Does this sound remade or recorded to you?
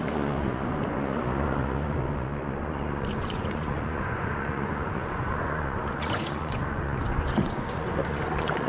remade